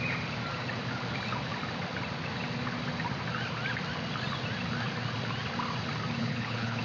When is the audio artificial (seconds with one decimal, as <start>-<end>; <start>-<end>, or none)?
6.2-6.8